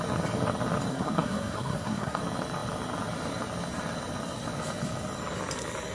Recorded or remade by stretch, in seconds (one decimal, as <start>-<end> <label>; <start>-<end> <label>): 0.0-0.9 recorded; 0.9-2.2 remade; 2.2-5.9 recorded